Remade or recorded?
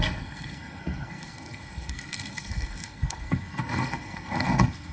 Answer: remade